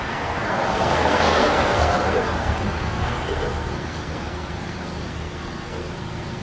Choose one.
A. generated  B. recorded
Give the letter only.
A